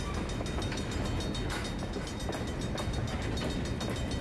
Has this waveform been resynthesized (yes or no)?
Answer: no